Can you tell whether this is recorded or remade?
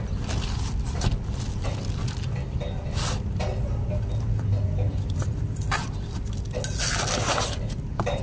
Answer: recorded